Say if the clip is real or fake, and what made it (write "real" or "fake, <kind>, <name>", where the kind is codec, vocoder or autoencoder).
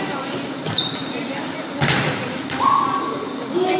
fake, vocoder, BigVGAN v2